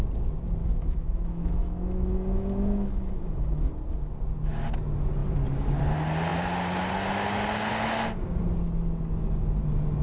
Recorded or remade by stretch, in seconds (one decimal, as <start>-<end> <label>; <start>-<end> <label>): 0.0-0.6 recorded; 0.6-3.7 remade; 3.7-10.0 recorded